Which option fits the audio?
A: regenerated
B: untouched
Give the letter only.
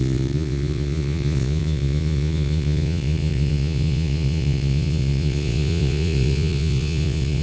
A